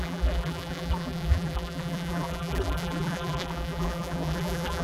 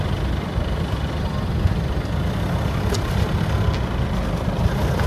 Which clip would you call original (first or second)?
second